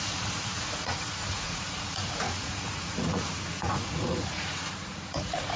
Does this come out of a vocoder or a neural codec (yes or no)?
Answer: yes